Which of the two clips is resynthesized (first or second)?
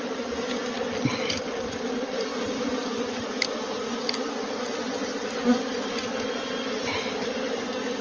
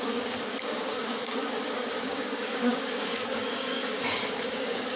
second